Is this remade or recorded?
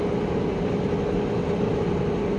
recorded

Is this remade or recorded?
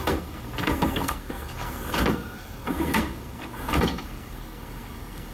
remade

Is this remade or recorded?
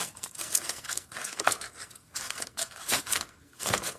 remade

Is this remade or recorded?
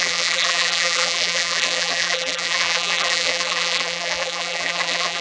remade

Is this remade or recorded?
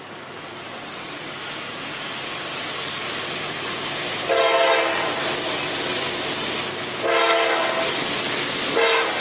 recorded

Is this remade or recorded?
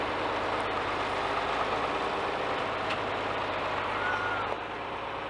recorded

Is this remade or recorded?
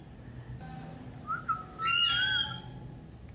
recorded